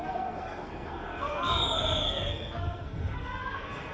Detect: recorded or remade remade